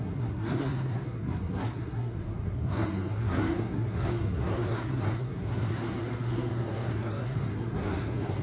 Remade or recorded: remade